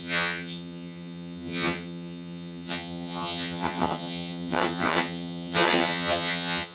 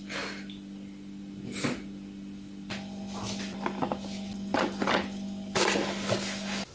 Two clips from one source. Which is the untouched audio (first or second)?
second